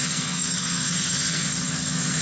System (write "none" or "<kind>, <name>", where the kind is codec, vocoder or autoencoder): codec, SNAC